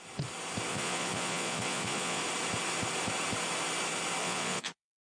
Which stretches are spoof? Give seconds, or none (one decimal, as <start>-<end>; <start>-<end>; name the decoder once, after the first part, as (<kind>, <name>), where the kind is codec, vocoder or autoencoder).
0.7-2.2 (vocoder, Vocos); 4.2-5.0